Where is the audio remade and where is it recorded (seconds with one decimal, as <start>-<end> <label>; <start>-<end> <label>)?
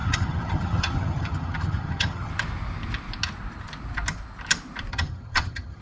0.0-2.3 remade; 2.3-4.9 recorded; 4.9-5.8 remade